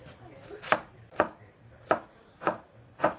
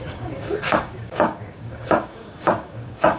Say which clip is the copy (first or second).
second